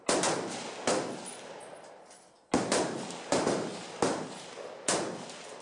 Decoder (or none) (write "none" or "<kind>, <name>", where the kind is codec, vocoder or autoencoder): none